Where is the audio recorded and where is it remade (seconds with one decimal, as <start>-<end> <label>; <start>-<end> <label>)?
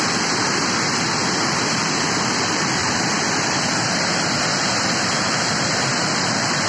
0.0-6.7 remade